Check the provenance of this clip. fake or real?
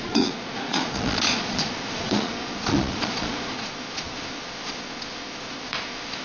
fake